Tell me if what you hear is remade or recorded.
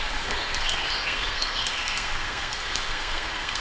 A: remade